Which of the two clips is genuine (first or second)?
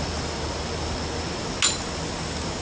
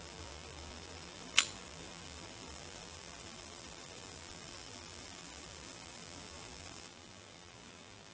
first